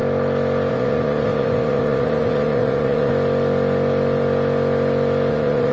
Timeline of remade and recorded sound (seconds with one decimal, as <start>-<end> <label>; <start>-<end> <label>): 0.0-0.7 recorded; 0.7-3.1 remade; 3.1-5.3 recorded; 5.3-5.7 remade